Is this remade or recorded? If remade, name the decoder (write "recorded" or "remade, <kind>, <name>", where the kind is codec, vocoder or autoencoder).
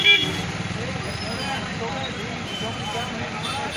recorded